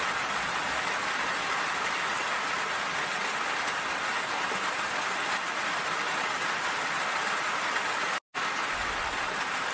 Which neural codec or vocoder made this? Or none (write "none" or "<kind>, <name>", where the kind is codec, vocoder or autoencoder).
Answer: none